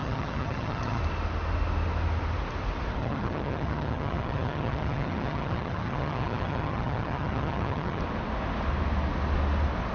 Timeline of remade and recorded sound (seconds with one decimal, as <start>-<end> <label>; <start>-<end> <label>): 0.0-1.0 remade; 1.0-3.0 recorded; 3.0-8.0 remade; 8.0-9.9 recorded